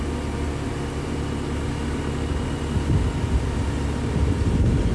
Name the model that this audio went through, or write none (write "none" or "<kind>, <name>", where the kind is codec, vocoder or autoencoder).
none